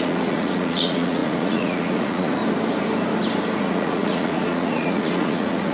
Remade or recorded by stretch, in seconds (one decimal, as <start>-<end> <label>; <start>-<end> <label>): 0.0-2.4 remade; 2.4-3.6 recorded; 3.6-5.7 remade